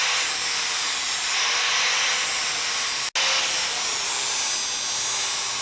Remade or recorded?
recorded